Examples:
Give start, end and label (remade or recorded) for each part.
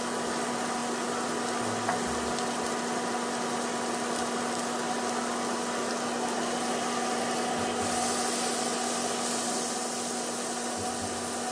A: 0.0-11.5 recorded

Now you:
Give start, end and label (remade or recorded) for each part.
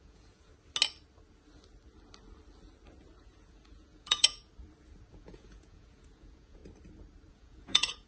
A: 0.0-0.5 remade; 0.5-3.2 recorded; 3.2-4.4 remade; 4.4-5.1 recorded; 5.1-6.6 remade; 6.6-7.3 recorded; 7.3-8.1 remade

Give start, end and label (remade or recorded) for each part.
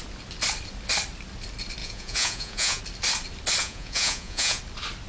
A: 0.0-1.8 recorded; 1.8-2.8 remade; 2.8-3.6 recorded; 3.6-4.6 remade; 4.6-5.1 recorded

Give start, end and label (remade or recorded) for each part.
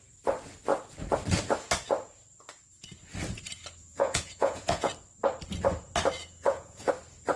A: 0.0-3.8 recorded; 3.8-4.9 remade; 4.9-6.2 recorded; 6.2-6.9 remade; 6.9-7.4 recorded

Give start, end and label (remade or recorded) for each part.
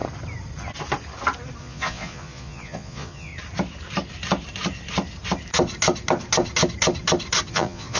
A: 0.0-1.6 recorded; 1.6-3.3 remade; 3.3-7.5 recorded; 7.5-8.0 remade